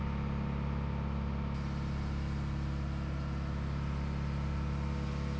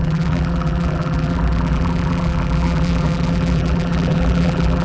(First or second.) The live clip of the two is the first